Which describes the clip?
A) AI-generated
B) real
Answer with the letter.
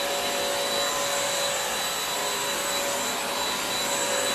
B